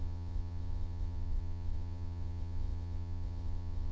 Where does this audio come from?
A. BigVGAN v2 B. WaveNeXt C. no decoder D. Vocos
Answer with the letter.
B